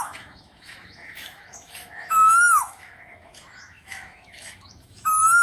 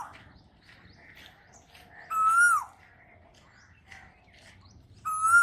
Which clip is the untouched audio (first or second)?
second